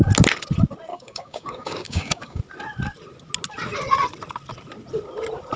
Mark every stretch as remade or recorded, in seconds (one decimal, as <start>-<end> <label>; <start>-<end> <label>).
0.0-0.9 recorded; 0.9-2.4 remade; 2.4-5.6 recorded